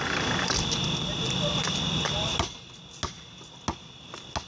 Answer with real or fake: real